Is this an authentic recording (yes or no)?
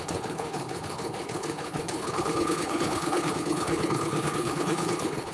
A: no